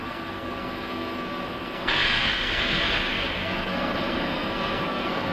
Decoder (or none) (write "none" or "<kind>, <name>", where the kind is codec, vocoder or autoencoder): codec, SNAC